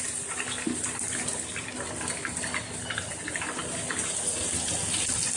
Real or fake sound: real